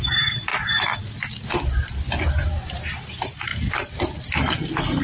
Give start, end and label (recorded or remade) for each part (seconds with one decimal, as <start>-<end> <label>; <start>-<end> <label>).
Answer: 0.0-0.5 remade; 0.5-2.3 recorded; 2.3-3.5 remade; 3.5-5.0 recorded